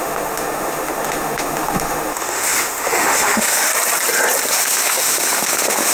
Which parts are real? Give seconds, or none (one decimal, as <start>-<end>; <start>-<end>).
3.7-4.5